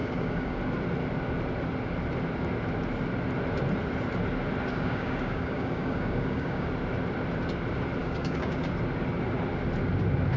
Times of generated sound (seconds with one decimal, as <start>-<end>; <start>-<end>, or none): 0.0-0.6; 4.7-6.7; 8.0-8.6